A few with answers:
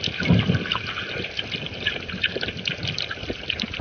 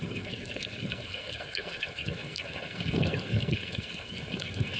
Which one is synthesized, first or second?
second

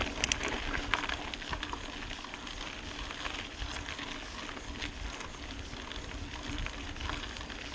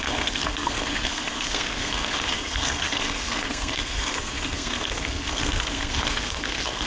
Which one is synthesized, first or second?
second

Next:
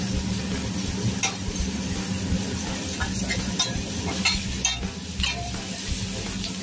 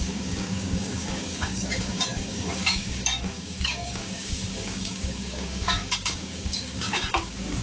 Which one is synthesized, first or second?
second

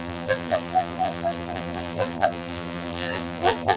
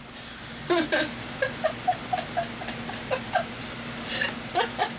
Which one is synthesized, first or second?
first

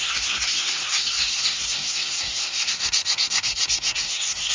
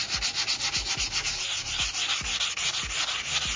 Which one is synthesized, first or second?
first